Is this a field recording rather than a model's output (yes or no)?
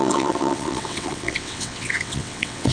no